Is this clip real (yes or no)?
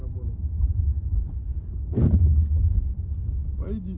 yes